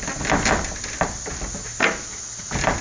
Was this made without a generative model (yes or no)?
yes